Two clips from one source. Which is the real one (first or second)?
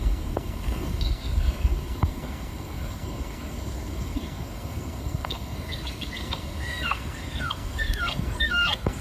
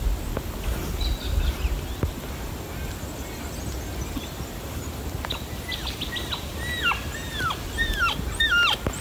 second